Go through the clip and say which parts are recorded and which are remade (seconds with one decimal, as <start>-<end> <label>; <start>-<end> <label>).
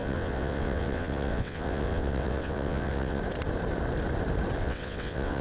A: 0.0-3.2 remade; 3.2-4.6 recorded; 4.6-5.4 remade